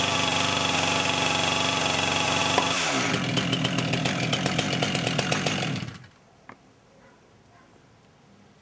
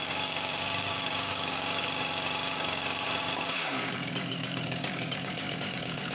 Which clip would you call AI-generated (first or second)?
second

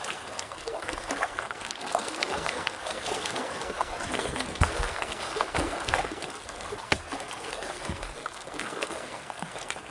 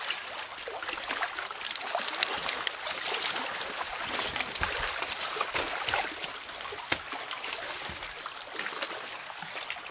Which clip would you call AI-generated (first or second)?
first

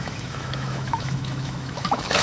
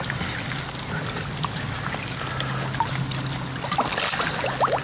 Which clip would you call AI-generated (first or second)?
first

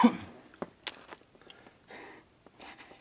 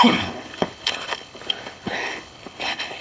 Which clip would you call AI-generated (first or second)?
second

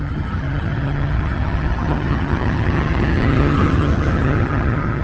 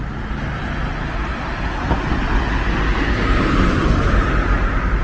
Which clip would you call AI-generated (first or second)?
first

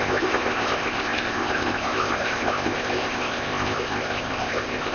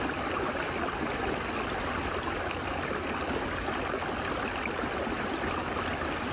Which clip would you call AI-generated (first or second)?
first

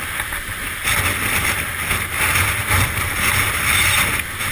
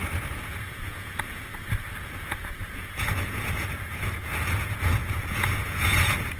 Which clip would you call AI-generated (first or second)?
second